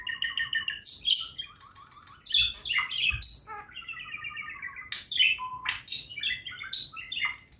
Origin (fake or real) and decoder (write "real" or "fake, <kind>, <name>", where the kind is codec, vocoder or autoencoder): real